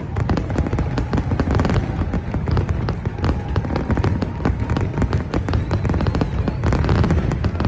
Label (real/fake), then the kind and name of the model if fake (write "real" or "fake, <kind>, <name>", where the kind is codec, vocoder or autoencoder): real